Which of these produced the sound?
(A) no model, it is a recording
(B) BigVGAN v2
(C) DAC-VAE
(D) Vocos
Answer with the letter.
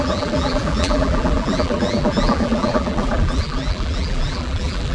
B